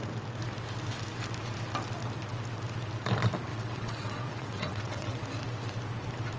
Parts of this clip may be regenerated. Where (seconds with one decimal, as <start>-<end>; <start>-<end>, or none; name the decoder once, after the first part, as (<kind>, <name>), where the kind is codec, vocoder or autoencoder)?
3.5-5.2 (vocoder, WaveNeXt)